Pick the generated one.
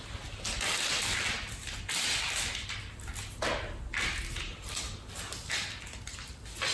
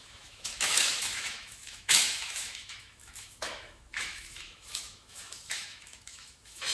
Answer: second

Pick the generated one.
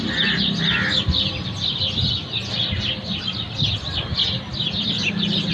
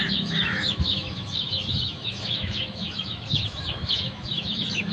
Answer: second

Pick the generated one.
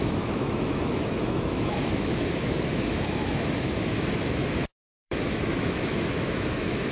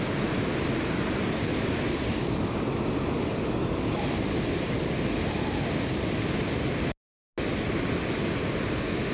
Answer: first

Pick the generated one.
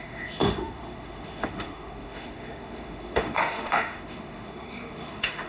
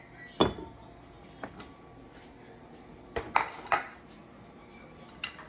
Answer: first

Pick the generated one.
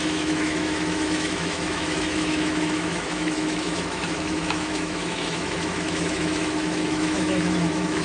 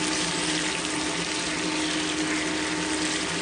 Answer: first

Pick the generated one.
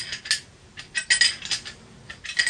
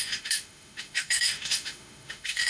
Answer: second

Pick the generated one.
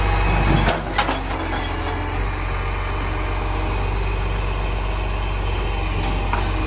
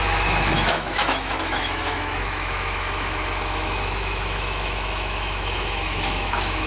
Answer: second